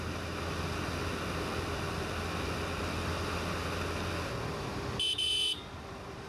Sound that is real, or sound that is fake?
real